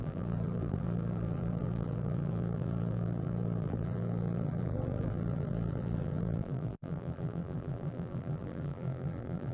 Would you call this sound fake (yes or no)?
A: yes